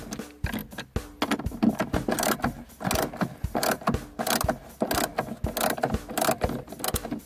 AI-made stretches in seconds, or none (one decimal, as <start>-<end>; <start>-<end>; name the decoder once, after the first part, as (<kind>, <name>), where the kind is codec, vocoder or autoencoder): none